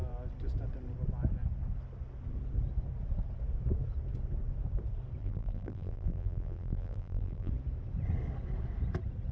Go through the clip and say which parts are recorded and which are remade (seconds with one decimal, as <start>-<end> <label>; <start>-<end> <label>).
0.0-5.2 recorded; 5.2-7.5 remade; 7.5-9.3 recorded